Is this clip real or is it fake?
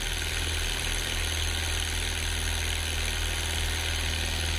real